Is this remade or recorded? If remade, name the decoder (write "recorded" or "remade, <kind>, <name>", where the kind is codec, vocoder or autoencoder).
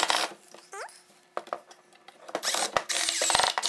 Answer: recorded